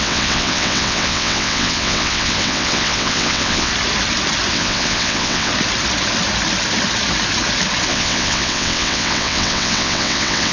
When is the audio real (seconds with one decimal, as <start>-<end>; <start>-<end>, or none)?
3.7-4.5; 5.5-7.9